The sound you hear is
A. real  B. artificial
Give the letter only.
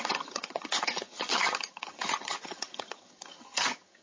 B